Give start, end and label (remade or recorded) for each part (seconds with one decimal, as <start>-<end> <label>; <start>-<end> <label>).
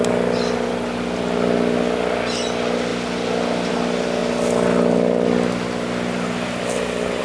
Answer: 0.0-7.2 recorded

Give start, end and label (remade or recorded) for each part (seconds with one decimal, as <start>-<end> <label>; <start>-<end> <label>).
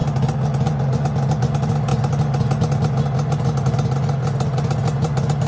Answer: 0.0-5.5 recorded